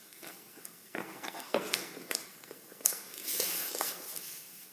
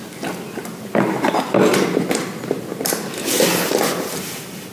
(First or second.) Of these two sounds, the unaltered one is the second